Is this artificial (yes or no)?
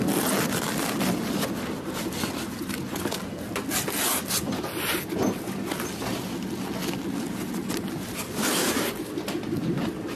no